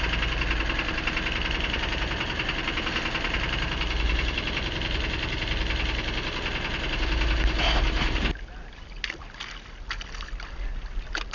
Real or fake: real